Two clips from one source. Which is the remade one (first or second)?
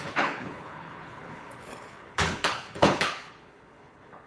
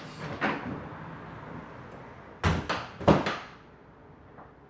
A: first